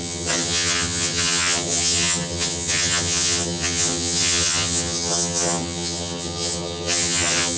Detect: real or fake fake